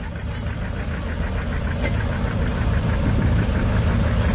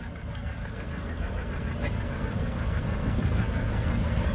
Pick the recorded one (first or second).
first